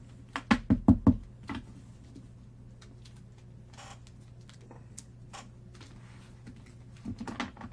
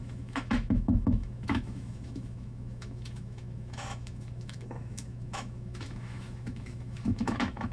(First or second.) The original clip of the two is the first